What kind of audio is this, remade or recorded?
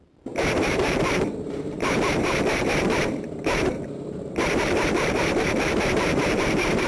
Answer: remade